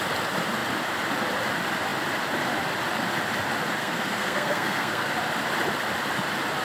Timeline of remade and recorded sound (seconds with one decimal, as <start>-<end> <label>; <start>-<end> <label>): 0.0-3.8 recorded; 3.8-5.1 remade; 5.1-6.6 recorded